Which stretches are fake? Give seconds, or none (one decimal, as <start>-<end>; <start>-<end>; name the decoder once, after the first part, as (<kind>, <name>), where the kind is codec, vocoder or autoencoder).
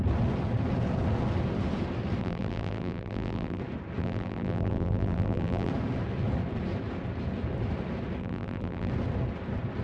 2.2-3.6 (vocoder, BigVGAN v2); 4.0-5.7; 8.2-8.9